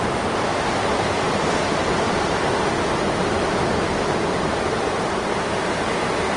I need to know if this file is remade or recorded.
recorded